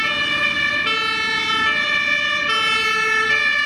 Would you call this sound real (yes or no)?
yes